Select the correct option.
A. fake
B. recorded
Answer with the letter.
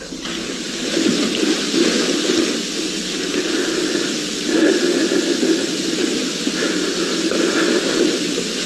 B